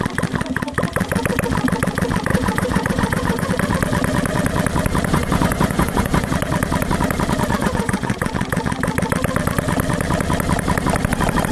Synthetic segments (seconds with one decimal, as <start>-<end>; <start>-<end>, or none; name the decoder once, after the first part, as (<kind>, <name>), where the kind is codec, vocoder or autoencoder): 2.3-3.5 (vocoder, Vocos); 5.1-6.3; 7.6-8.3